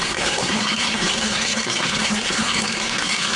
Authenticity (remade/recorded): remade